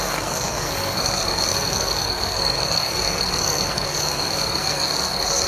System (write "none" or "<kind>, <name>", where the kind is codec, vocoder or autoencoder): codec, SNAC